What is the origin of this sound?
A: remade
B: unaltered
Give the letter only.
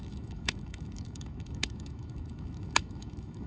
A